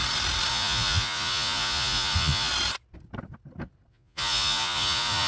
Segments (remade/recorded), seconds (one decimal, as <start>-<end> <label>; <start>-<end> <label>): 0.0-0.5 recorded; 0.5-2.5 remade; 2.5-3.9 recorded; 3.9-5.3 remade